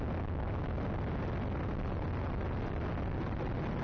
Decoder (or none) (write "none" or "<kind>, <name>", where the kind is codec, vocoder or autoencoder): none